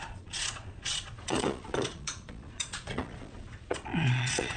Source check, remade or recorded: remade